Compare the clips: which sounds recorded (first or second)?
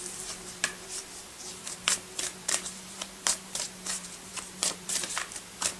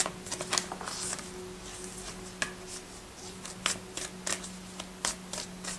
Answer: second